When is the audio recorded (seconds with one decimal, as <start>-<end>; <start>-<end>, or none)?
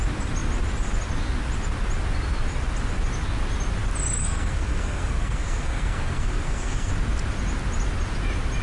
0.0-4.2; 6.9-8.6